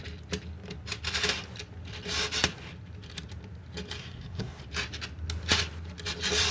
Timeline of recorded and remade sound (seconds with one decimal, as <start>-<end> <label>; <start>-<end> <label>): 0.0-4.0 recorded; 4.0-4.6 remade; 4.6-6.5 recorded